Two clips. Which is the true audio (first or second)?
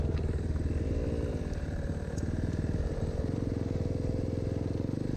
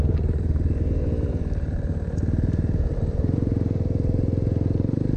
first